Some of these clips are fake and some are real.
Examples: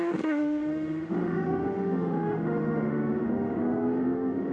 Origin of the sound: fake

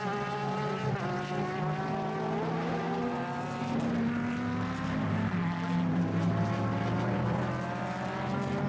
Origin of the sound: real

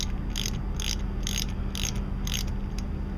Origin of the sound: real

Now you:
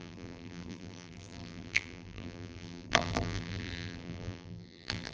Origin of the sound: fake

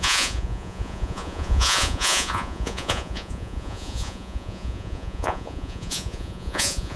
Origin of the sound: fake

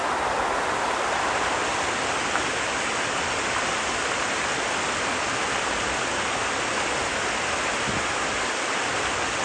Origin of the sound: real